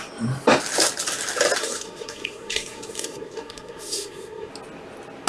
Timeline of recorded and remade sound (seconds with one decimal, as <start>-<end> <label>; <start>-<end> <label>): 0.0-1.6 recorded; 1.6-4.5 remade; 4.5-5.3 recorded